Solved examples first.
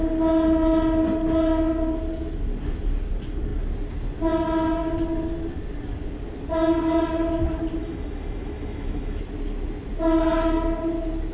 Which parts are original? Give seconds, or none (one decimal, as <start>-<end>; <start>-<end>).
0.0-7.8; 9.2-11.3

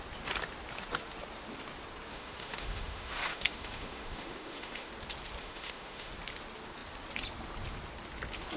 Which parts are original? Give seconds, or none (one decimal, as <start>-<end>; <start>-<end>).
0.0-2.1; 4.9-5.4; 6.1-8.6

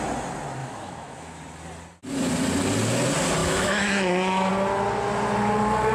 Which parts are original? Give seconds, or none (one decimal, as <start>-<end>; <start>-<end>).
0.0-0.6; 1.4-3.4; 4.5-5.9